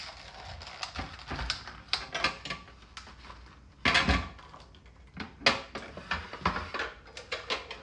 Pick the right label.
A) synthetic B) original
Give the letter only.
B